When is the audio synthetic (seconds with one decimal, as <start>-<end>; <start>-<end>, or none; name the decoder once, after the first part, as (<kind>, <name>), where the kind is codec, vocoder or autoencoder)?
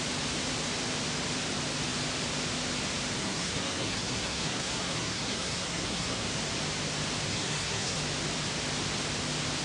3.2-6.3 (codec, SNAC); 7.3-8.0